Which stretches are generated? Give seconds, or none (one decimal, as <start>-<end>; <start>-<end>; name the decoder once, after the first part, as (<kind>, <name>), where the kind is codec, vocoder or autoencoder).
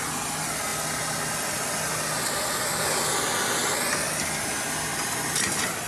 none